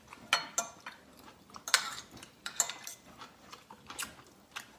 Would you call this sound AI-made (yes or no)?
no